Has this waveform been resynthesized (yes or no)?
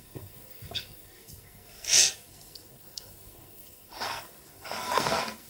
yes